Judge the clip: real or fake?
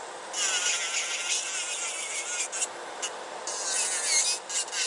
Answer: real